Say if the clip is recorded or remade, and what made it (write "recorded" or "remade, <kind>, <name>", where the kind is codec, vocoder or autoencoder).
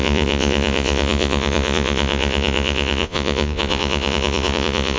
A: remade, vocoder, Vocos